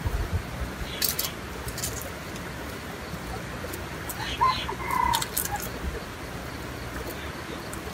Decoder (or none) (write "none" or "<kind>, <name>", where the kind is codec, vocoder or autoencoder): none